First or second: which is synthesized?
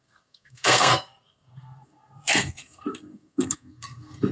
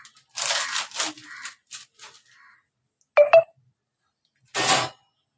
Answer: first